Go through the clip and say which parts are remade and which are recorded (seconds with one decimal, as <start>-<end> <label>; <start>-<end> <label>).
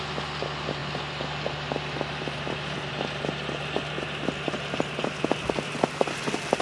0.0-6.6 recorded